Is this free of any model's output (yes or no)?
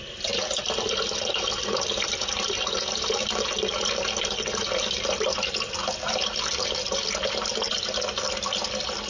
yes